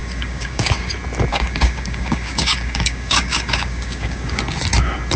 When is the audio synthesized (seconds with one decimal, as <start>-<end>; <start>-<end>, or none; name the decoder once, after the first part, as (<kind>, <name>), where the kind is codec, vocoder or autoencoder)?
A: 0.0-0.9 (codec, DAC); 1.3-4.4